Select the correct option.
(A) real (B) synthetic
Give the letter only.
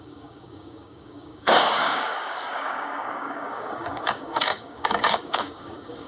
B